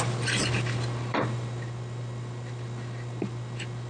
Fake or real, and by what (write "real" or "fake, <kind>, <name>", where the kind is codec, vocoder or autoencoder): real